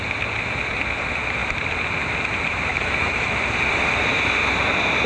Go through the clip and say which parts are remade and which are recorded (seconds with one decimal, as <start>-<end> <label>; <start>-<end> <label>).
0.0-2.7 recorded; 2.7-3.4 remade; 3.4-5.1 recorded